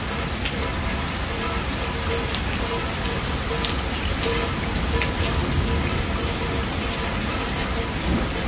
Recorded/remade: recorded